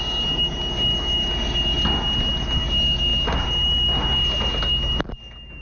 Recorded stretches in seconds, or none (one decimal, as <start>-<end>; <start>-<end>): 0.0-5.6